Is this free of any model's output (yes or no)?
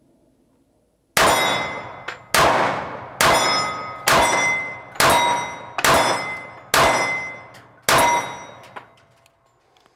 yes